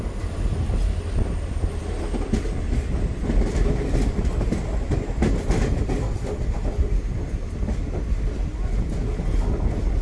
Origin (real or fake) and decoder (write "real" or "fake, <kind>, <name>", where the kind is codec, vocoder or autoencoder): real